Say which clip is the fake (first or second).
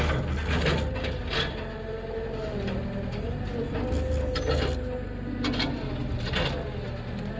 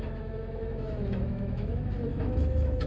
second